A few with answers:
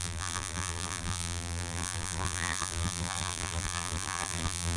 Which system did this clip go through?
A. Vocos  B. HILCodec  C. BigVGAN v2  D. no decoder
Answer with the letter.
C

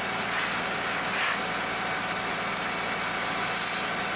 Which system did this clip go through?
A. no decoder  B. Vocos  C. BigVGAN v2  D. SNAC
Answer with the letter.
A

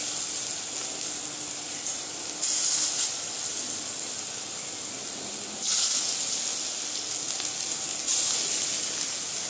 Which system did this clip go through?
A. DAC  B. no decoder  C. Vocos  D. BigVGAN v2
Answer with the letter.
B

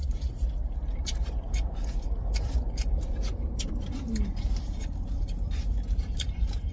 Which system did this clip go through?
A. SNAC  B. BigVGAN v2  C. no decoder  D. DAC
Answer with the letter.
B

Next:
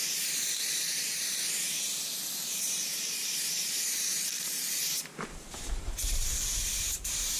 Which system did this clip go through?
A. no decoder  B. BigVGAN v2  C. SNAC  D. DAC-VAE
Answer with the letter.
B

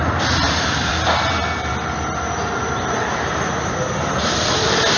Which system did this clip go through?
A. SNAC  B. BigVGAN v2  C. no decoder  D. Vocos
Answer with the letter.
B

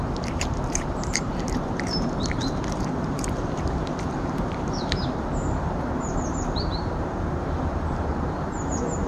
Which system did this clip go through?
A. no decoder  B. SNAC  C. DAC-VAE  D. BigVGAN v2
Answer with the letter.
D